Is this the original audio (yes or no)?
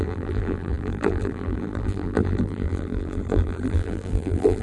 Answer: no